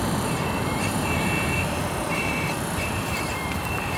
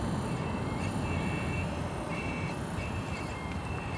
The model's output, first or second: first